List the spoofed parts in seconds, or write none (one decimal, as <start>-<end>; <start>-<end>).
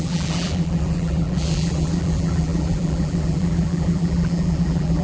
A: 0.0-5.0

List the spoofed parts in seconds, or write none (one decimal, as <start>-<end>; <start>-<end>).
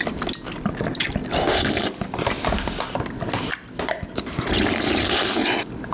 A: none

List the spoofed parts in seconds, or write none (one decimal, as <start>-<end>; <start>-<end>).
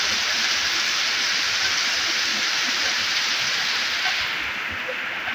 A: 0.6-1.7; 2.3-4.0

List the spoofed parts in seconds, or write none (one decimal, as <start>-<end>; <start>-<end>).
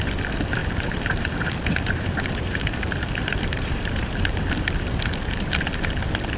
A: 0.6-4.4